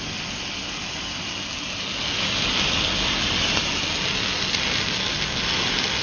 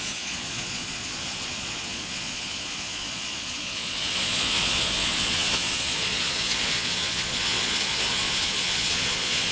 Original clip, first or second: first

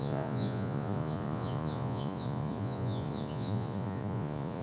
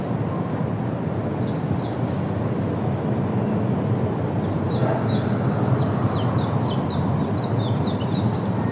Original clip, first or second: second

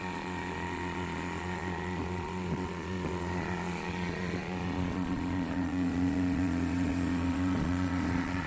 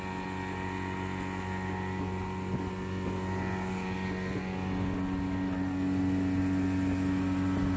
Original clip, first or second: second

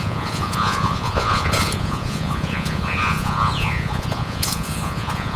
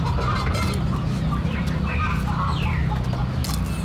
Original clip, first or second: second